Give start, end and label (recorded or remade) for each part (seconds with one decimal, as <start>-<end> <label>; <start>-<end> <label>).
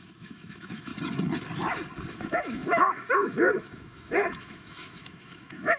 0.0-0.9 remade; 0.9-2.1 recorded; 2.1-5.8 remade